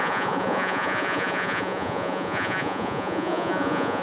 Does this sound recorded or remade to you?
remade